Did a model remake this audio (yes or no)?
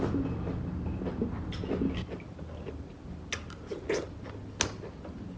no